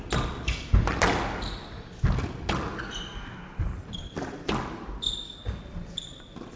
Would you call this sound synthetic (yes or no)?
no